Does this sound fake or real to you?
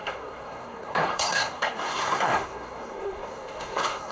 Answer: fake